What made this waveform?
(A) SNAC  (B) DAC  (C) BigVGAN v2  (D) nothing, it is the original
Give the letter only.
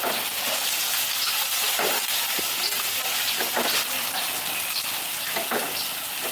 D